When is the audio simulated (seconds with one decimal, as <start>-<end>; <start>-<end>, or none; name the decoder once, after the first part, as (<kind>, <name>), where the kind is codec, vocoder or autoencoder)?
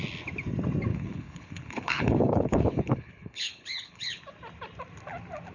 0.9-4.2 (codec, HILCodec)